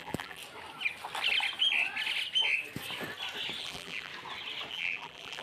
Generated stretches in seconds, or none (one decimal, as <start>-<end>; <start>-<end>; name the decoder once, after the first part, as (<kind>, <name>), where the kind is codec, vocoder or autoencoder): 0.0-0.4 (vocoder, BigVGAN v2); 3.6-4.1; 4.7-5.4